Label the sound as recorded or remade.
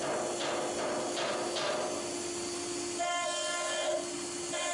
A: recorded